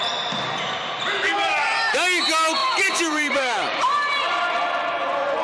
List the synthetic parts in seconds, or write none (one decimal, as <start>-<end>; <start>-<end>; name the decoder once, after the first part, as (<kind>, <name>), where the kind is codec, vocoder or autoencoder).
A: 2.6-4.8 (vocoder, BigVGAN v2)